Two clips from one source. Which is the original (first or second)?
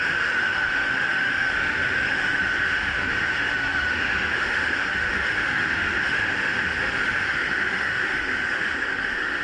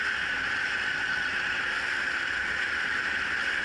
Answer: second